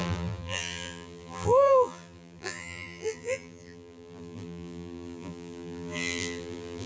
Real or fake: fake